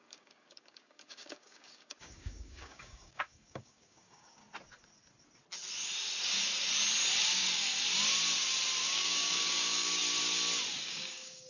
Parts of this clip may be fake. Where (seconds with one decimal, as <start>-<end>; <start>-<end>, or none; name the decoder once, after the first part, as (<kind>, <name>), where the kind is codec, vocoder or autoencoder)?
0.0-4.4 (codec, DAC); 7.3-7.7; 8.8-10.0; 10.8-11.5